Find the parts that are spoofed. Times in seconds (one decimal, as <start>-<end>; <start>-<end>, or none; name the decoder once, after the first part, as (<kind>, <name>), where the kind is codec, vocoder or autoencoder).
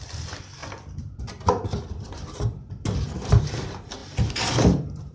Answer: 4.0-5.1 (vocoder, BigVGAN v2)